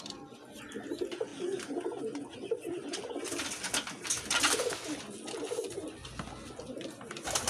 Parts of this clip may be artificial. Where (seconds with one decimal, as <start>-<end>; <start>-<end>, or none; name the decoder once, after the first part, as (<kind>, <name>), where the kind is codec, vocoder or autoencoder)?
none

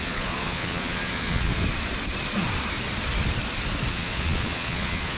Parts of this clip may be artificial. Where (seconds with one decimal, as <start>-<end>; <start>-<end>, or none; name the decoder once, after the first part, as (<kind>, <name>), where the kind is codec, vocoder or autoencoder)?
0.0-1.5 (vocoder, Vocos); 3.9-5.2

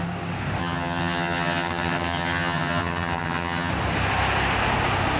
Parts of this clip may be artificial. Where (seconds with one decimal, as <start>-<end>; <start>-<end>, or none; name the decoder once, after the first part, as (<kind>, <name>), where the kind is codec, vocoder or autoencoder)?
0.6-3.7 (vocoder, HiFi-GAN)

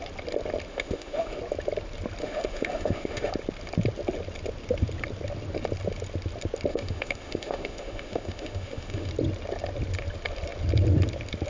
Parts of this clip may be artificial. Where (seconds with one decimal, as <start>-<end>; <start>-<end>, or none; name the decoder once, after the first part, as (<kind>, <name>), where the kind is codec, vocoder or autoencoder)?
0.7-1.4 (autoencoder, DAC-VAE); 2.2-3.3; 6.7-9.1

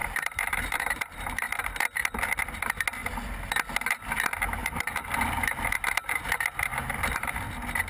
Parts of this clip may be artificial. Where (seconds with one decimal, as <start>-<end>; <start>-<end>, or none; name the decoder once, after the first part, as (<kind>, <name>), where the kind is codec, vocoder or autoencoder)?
0.0-1.6 (vocoder, BigVGAN v2); 4.6-5.2; 6.7-7.5

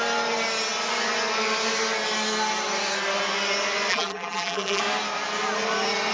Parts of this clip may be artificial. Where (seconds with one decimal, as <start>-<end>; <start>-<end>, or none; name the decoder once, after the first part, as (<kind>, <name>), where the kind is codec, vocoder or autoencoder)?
3.9-4.8 (vocoder, BigVGAN v2)